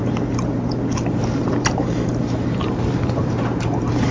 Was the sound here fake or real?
fake